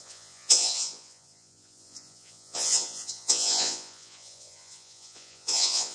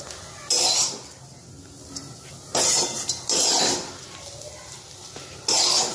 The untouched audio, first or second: second